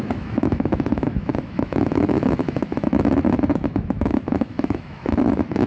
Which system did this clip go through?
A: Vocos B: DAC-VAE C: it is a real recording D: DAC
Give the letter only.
B